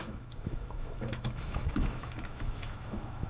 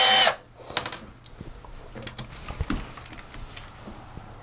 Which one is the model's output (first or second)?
first